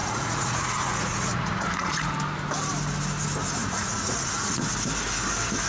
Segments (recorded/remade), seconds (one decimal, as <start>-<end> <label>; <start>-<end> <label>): 0.0-2.1 remade; 2.1-3.6 recorded; 3.6-4.6 remade; 4.6-5.7 recorded